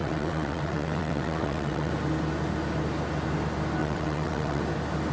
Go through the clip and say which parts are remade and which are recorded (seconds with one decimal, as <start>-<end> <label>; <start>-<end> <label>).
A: 0.0-1.9 remade; 1.9-3.8 recorded; 3.8-4.6 remade; 4.6-5.1 recorded